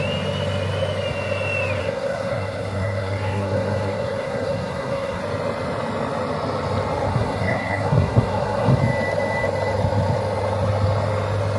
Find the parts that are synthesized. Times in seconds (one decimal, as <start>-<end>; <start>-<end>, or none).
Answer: 1.8-5.2; 7.1-8.8